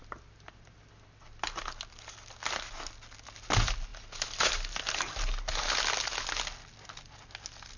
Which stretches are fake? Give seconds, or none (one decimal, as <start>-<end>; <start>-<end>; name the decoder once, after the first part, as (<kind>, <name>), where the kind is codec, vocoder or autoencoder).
none